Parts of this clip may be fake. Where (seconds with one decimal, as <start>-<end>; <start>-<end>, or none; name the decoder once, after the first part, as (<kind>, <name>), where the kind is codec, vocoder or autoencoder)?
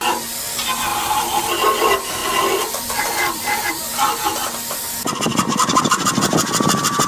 0.9-1.4 (vocoder, BigVGAN v2); 2.2-3.9